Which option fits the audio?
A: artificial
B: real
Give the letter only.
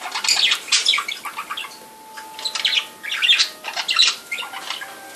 B